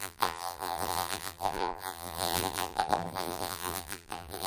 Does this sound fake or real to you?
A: fake